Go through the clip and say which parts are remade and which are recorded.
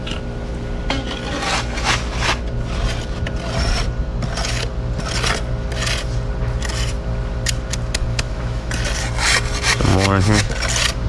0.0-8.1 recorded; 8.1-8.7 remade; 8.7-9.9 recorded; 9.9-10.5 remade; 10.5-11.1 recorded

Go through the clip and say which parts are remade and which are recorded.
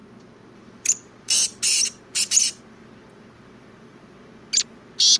0.0-1.6 remade; 1.6-5.2 recorded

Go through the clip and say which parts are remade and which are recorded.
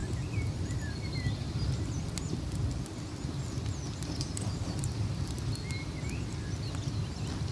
0.0-4.3 recorded; 4.3-5.5 remade; 5.5-7.5 recorded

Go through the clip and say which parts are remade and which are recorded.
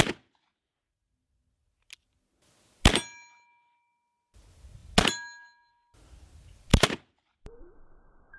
0.0-6.7 recorded; 6.7-8.4 remade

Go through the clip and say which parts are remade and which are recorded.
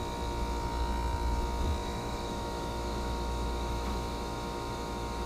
0.0-1.8 recorded; 1.8-5.3 remade